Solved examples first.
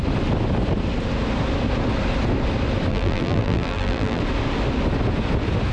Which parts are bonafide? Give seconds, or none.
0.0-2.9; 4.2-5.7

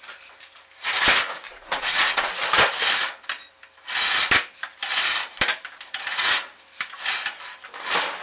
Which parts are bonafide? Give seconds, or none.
0.0-1.5; 2.3-8.2

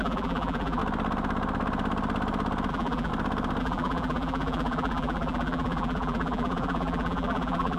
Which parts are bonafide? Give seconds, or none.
0.8-2.7; 3.1-3.6

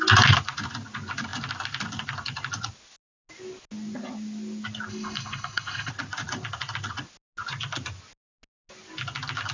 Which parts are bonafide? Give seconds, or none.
0.0-4.9; 5.9-9.5